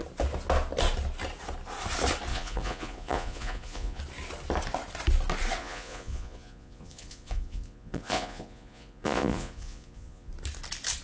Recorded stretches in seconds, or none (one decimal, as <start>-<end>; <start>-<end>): 0.0-2.3; 4.0-5.6; 10.3-11.0